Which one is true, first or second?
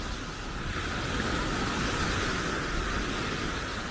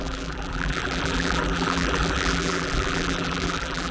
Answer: first